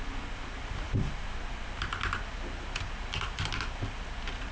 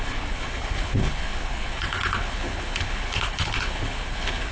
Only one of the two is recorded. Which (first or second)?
first